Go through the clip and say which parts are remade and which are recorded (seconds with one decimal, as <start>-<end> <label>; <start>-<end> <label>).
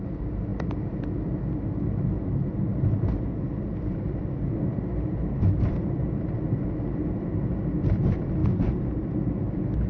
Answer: 0.0-9.9 recorded